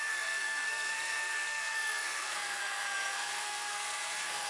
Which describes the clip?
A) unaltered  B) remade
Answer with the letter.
B